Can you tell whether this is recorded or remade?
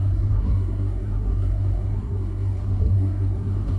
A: remade